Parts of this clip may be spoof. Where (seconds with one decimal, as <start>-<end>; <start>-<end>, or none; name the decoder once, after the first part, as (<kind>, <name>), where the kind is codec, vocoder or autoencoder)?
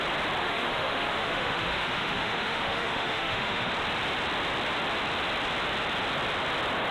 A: 0.4-3.7 (autoencoder, DAC-VAE)